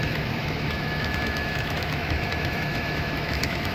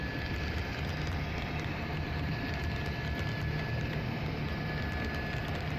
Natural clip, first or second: second